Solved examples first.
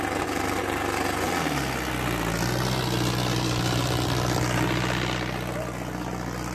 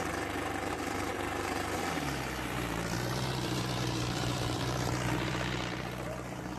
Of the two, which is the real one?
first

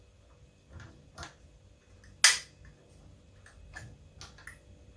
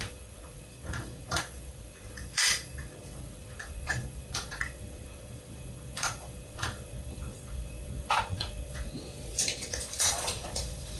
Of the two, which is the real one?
first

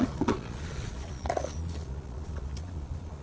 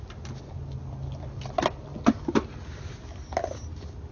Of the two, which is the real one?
second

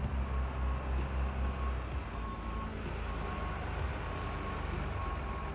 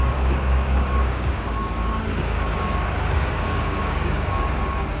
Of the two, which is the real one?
first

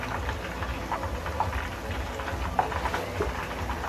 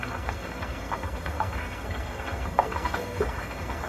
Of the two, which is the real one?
first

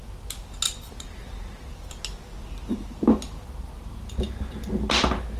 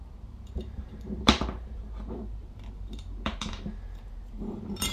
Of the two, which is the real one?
first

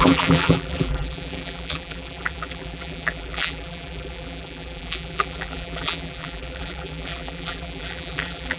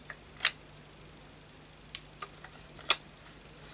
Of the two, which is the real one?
second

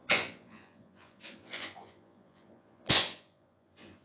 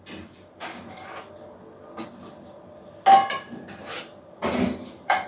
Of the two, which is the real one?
second